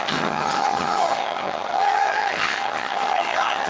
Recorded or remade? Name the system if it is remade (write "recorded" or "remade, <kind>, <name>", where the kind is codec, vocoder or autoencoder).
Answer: remade, vocoder, HiFi-GAN